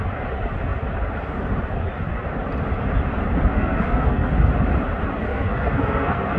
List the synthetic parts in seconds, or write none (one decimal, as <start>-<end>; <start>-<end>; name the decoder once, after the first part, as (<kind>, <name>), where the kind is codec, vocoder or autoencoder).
3.5-4.3 (codec, SNAC); 5.3-6.4